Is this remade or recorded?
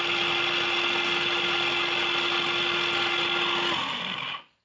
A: recorded